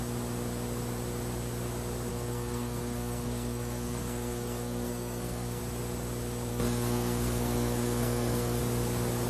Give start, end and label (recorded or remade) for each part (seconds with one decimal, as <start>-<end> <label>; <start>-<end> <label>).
0.0-2.1 recorded; 2.1-5.6 remade; 5.6-6.5 recorded; 6.5-8.6 remade; 8.6-9.3 recorded